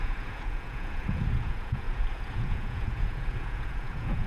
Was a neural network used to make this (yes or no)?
yes